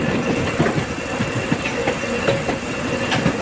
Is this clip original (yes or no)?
yes